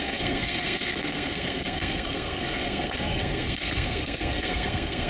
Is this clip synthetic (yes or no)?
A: yes